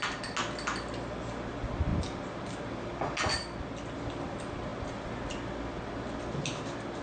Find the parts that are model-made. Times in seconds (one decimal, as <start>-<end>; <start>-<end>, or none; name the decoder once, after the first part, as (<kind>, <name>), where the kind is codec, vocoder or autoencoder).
none